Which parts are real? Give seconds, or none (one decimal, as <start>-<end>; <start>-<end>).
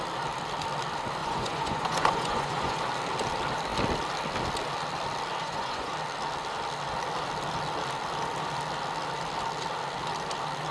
0.0-1.2; 2.8-5.4; 5.9-10.7